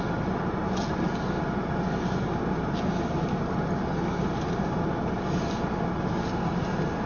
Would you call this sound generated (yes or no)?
no